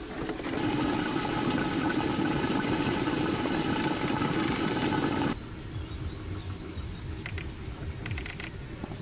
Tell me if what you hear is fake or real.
fake